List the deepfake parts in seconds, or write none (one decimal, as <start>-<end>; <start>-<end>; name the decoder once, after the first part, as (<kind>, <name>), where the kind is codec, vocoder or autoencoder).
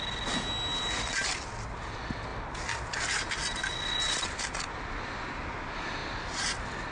none